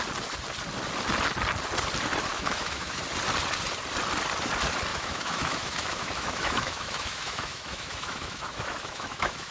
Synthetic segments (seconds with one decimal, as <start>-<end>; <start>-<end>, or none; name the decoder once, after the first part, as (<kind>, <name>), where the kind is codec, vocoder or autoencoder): 2.3-3.0 (autoencoder, DAC-VAE); 4.9-9.5